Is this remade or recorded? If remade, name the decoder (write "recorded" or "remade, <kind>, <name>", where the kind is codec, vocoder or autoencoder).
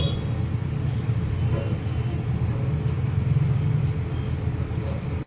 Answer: recorded